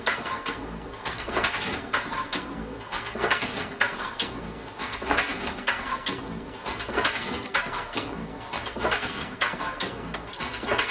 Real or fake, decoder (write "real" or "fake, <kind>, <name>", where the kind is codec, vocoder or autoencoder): fake, codec, SNAC